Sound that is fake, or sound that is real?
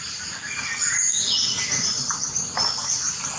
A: real